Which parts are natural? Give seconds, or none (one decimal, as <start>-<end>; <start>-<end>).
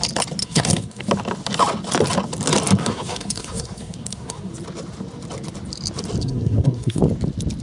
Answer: 0.0-0.4; 1.0-2.8; 4.5-6.2; 7.0-7.6